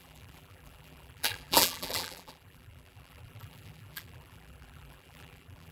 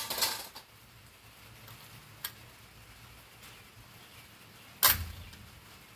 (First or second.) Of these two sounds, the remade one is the first